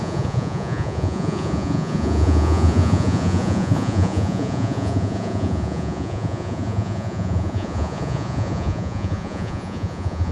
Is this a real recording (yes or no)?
no